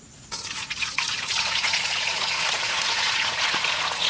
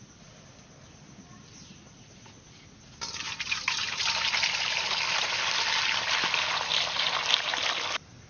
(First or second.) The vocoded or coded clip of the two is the first